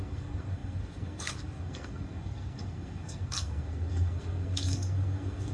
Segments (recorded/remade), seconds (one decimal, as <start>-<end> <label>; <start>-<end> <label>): 0.0-5.5 remade